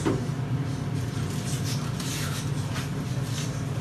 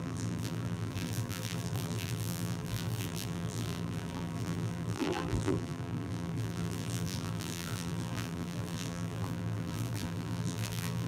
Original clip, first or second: first